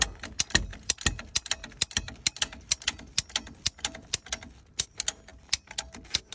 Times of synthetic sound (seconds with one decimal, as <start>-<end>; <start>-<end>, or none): none